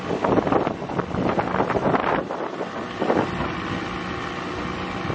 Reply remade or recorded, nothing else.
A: recorded